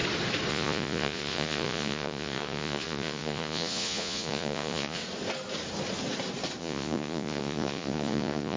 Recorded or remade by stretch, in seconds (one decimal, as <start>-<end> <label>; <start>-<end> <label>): 0.0-0.5 recorded; 0.5-5.0 remade; 5.0-6.6 recorded; 6.6-8.6 remade